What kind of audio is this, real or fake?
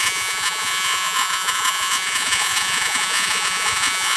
fake